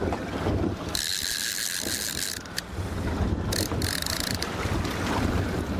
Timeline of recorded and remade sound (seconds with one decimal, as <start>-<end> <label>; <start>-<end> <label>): 0.0-5.8 recorded